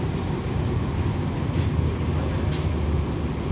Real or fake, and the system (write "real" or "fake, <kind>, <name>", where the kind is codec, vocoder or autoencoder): real